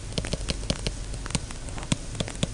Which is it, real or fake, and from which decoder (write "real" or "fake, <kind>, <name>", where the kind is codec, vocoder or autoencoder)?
real